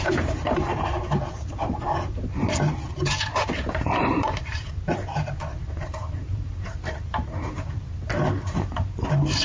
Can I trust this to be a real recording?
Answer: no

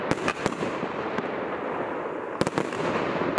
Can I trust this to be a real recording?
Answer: yes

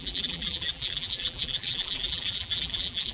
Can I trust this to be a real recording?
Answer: no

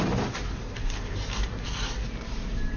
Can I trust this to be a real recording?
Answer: no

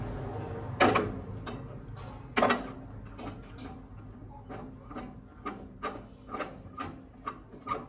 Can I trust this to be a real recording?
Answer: yes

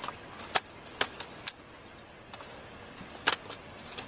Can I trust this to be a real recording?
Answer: yes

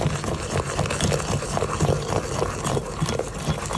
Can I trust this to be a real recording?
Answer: yes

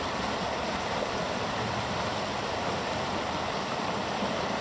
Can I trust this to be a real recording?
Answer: yes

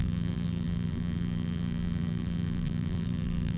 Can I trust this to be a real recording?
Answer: no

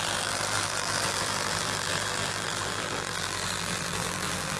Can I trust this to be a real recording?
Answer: no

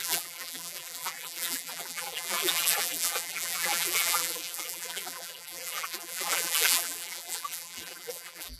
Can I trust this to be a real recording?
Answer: no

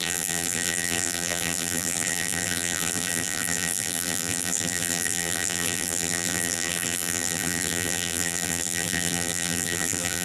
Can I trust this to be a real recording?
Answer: no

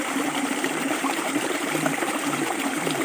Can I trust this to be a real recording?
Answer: no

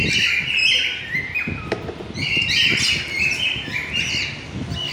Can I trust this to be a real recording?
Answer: yes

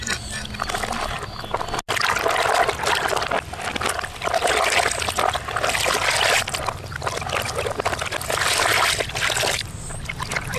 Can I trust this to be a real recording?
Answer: yes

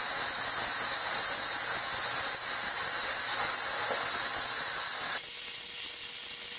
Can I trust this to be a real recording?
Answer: yes